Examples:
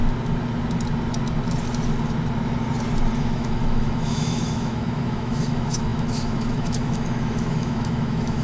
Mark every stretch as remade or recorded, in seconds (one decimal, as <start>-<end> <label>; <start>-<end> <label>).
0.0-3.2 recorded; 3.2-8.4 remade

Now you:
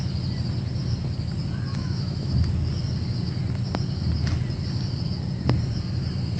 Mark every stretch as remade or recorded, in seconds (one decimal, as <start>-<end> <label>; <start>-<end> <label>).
0.0-1.7 recorded; 1.7-2.3 remade; 2.3-6.4 recorded

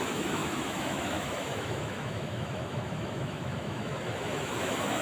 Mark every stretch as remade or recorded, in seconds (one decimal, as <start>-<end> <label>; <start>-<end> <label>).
0.0-5.0 remade

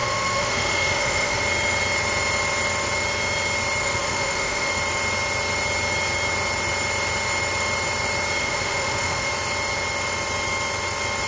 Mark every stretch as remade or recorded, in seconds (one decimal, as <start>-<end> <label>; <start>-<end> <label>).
0.0-1.4 remade; 1.4-3.8 recorded; 3.8-4.7 remade; 4.7-8.4 recorded; 8.4-9.3 remade; 9.3-11.3 recorded

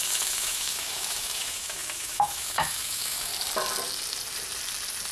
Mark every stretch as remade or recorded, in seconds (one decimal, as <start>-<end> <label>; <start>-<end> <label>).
0.0-3.3 remade; 3.3-5.1 recorded

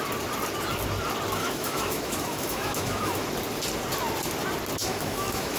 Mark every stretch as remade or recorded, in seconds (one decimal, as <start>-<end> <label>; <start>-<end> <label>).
0.0-1.4 recorded; 1.4-3.2 remade; 3.2-4.8 recorded; 4.8-5.6 remade

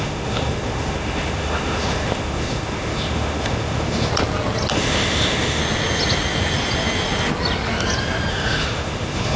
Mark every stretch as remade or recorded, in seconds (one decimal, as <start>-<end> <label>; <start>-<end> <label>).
0.0-4.1 remade; 4.1-4.7 recorded; 4.7-5.6 remade; 5.6-8.3 recorded; 8.3-9.4 remade